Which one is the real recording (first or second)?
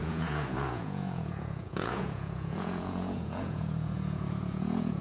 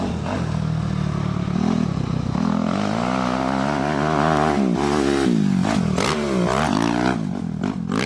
second